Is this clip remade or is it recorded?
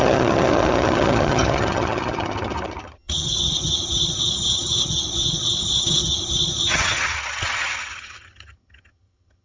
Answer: remade